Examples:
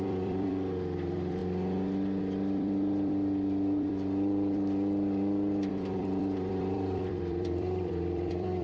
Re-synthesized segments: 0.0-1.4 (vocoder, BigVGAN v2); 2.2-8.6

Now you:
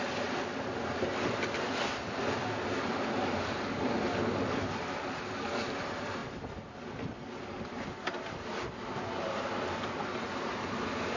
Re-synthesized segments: none

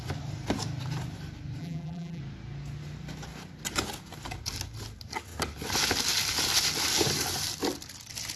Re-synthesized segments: 1.6-2.2 (vocoder, BigVGAN v2)

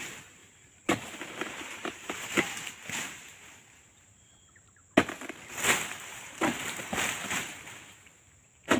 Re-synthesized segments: 0.0-4.8 (vocoder, BigVGAN v2); 5.7-8.8